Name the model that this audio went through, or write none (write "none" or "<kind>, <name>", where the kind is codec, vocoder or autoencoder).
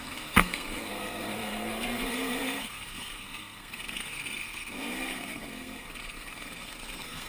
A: codec, SNAC